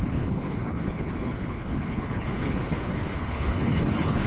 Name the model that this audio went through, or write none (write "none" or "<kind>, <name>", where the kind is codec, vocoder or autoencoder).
codec, HILCodec